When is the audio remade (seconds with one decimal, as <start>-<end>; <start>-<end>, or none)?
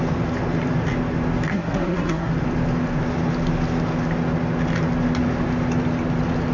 1.5-2.3